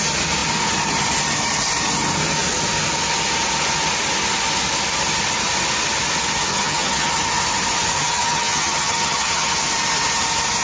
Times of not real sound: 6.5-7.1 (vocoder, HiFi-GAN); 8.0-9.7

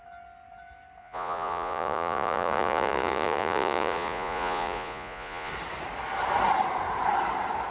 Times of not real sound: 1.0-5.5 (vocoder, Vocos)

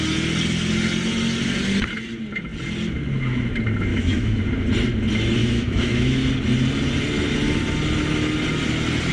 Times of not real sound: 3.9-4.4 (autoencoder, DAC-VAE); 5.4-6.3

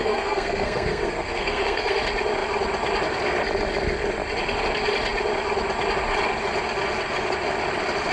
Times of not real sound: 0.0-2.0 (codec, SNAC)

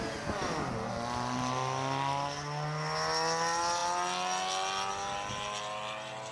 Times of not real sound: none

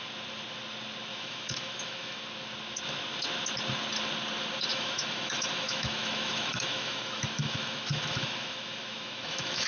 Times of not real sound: 1.1-2.2 (autoencoder, DAC-VAE); 4.7-9.7